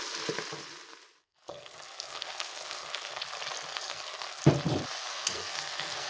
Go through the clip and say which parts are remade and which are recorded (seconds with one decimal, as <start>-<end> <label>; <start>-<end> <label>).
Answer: 0.0-1.2 recorded; 1.2-3.2 remade; 3.2-3.7 recorded; 3.7-4.4 remade; 4.4-5.0 recorded; 5.0-6.1 remade